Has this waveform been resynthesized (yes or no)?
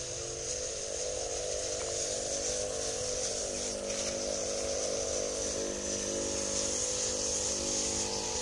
no